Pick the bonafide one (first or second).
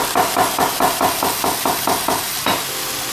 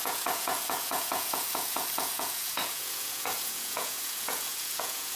first